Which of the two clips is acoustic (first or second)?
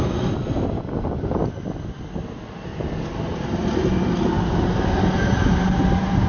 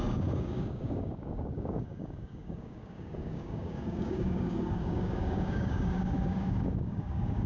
first